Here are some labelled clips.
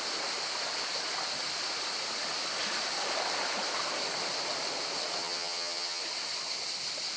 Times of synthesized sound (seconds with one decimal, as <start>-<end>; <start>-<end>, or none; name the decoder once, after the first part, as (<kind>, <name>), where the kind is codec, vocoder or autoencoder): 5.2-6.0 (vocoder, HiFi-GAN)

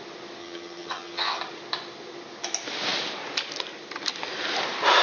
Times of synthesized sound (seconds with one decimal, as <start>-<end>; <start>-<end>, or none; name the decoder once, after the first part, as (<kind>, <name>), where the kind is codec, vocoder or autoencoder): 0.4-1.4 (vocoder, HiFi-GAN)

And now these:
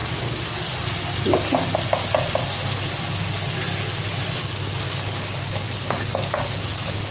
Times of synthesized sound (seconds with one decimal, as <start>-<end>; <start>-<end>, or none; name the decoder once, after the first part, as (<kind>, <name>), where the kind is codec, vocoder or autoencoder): none

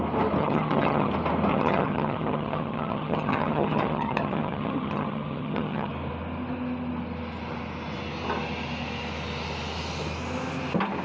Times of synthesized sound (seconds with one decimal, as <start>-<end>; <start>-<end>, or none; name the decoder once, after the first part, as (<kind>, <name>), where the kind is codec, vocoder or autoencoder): 0.4-1.1 (vocoder, HiFi-GAN); 1.5-5.9

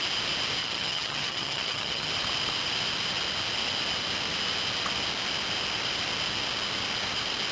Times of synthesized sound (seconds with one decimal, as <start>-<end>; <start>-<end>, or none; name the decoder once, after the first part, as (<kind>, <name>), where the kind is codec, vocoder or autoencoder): 0.6-2.1 (vocoder, HiFi-GAN)